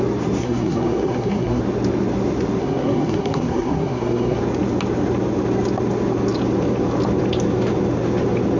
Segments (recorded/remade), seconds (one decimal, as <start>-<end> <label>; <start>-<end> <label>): 0.0-0.4 recorded; 0.4-1.6 remade; 1.6-2.6 recorded; 2.6-4.4 remade; 4.4-8.6 recorded